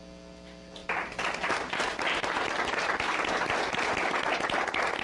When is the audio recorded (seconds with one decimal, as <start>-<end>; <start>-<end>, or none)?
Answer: 0.0-5.0